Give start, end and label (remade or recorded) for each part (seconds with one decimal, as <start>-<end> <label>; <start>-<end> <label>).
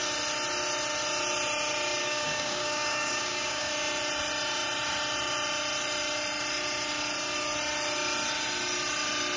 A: 0.0-2.0 recorded; 2.0-3.7 remade; 3.7-9.4 recorded